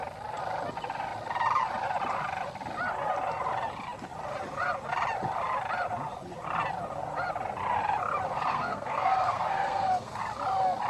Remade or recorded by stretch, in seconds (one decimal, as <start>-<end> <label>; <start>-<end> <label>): 0.0-8.5 recorded; 8.5-10.2 remade; 10.2-10.9 recorded